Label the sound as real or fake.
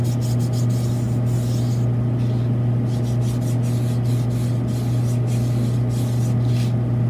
real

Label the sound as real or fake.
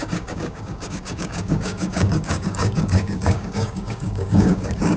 fake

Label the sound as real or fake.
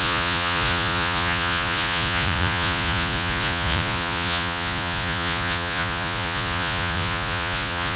fake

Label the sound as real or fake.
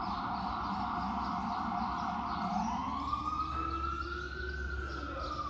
real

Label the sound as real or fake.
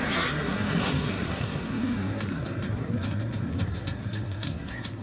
fake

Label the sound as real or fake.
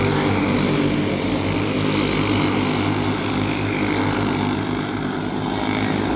real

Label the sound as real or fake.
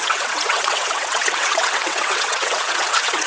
fake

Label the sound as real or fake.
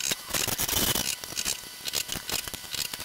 real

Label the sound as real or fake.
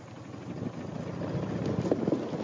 real